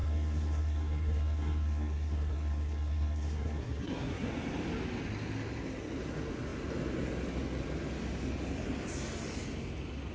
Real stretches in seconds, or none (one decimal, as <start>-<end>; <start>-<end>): 4.3-10.1